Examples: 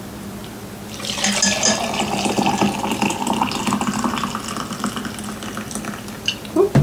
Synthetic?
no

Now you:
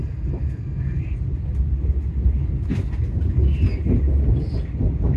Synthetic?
no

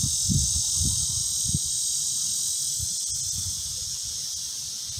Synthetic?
no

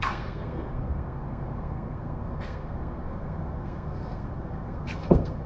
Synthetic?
yes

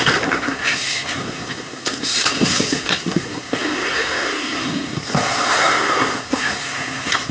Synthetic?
yes